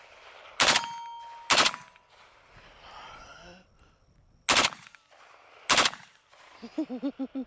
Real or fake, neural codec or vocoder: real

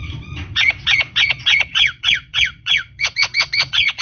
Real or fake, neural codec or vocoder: fake, vocoder, WaveNeXt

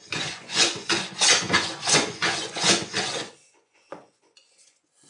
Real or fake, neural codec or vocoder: fake, vocoder, Vocos